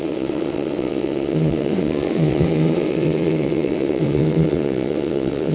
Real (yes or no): no